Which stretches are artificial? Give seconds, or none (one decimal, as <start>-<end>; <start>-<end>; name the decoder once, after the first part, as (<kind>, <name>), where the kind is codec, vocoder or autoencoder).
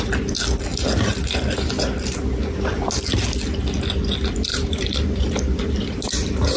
4.5-6.6 (vocoder, BigVGAN v2)